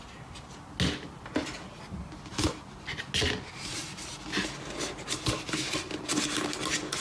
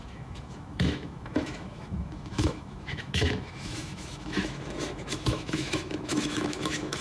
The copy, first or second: second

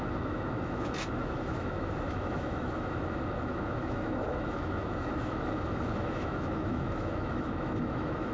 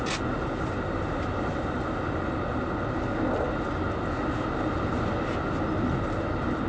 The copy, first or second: first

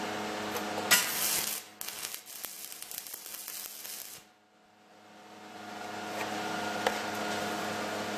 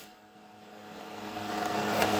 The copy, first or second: second